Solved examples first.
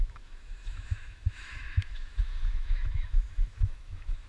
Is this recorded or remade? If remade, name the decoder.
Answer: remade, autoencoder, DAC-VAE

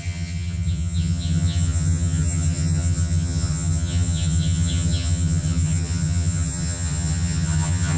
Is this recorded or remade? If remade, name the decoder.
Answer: remade, vocoder, HiFi-GAN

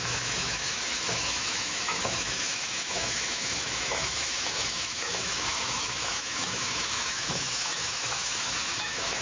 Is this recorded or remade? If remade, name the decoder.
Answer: remade, autoencoder, DAC-VAE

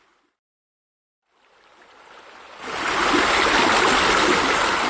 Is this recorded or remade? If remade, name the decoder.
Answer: recorded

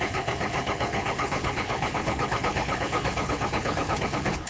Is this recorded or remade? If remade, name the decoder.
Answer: remade, codec, HILCodec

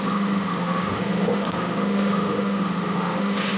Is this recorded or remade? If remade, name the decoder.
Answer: remade, autoencoder, DAC-VAE